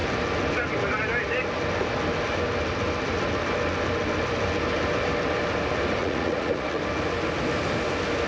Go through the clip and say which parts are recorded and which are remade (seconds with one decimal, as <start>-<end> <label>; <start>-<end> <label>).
0.0-6.0 recorded; 6.0-6.8 remade; 6.8-8.3 recorded